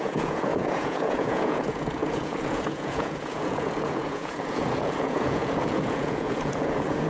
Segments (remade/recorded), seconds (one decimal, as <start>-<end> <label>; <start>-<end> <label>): 0.0-7.1 remade